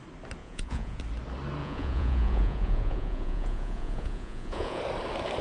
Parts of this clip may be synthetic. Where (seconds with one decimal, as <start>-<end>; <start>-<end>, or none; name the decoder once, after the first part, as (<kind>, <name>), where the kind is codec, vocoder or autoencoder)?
0.4-1.0 (vocoder, Vocos); 1.6-4.8